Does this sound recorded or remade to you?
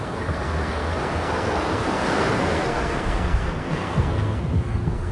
remade